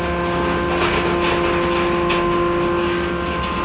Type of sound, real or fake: real